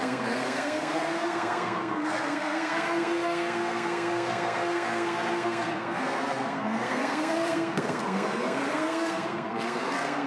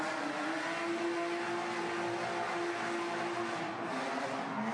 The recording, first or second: second